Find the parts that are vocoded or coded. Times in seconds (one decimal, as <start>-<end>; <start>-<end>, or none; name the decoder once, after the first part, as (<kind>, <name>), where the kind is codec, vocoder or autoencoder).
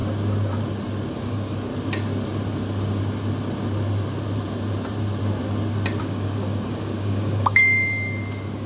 1.1-1.7 (codec, DAC); 6.0-8.7